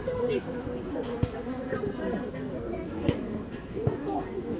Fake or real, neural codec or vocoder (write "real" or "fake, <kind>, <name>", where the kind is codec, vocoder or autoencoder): fake, codec, SNAC